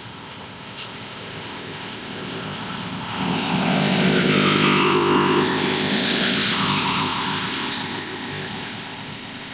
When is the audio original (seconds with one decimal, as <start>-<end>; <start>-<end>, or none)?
none